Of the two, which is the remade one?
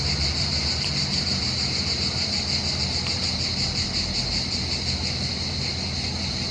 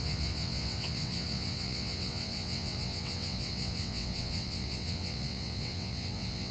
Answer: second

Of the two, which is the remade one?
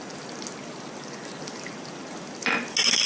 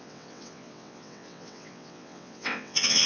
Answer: second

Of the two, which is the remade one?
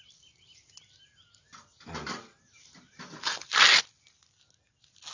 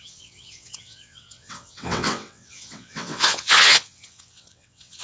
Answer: second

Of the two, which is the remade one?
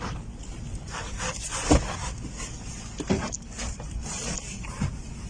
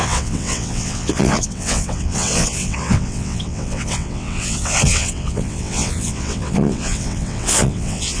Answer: second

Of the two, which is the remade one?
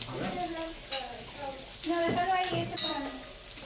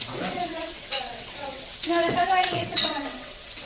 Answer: second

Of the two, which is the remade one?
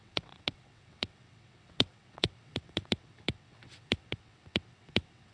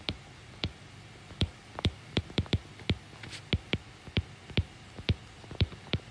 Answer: first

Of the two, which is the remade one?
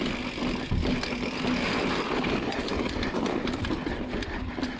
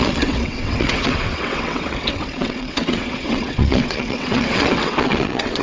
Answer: second